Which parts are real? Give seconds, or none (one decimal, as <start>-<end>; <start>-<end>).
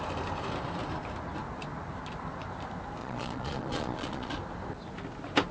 0.0-3.0; 4.3-5.5